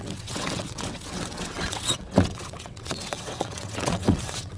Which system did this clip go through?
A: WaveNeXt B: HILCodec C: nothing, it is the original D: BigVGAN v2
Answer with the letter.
A